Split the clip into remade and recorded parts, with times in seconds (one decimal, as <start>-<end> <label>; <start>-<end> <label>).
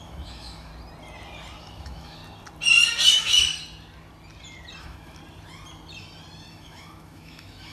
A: 0.0-0.7 remade; 0.7-1.6 recorded; 1.6-2.2 remade; 2.2-3.1 recorded; 3.1-3.5 remade; 3.5-4.8 recorded; 4.8-5.2 remade; 5.2-6.5 recorded; 6.5-7.7 remade